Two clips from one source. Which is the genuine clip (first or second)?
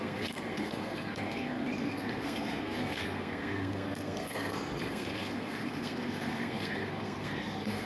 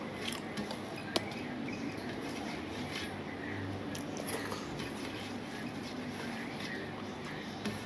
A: second